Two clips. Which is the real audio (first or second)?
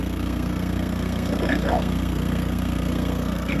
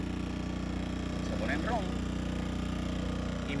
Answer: second